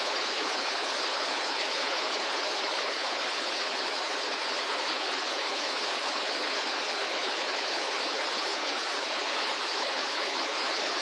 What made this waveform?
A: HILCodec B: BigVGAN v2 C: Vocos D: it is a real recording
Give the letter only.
A